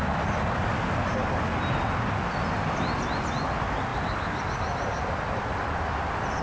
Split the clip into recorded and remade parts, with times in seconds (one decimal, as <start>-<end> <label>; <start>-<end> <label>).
0.0-6.4 recorded